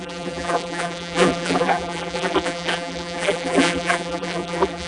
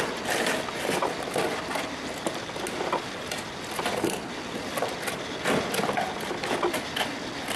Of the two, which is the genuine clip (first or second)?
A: second